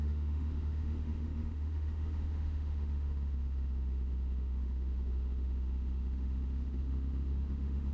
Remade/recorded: remade